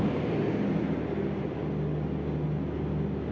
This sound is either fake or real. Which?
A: real